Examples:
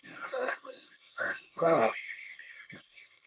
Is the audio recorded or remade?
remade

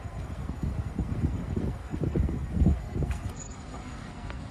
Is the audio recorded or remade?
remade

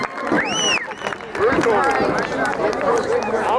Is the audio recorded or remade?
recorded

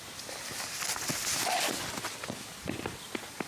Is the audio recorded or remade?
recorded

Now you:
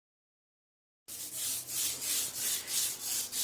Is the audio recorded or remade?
recorded